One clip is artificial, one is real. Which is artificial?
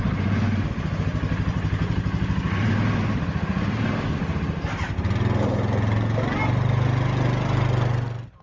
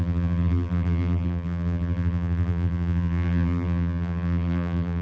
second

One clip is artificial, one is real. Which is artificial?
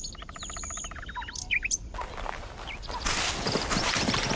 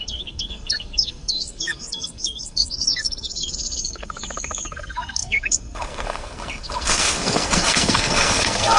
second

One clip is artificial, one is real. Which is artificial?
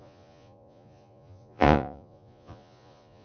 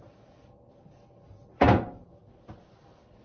first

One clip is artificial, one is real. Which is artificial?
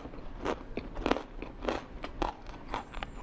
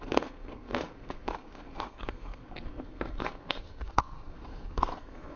second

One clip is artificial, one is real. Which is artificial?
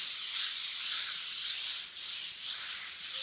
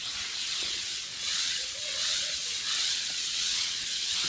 second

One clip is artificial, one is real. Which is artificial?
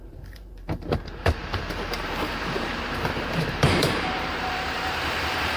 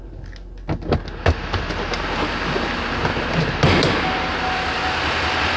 first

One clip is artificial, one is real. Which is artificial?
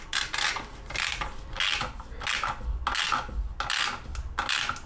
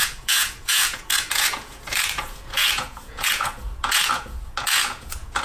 second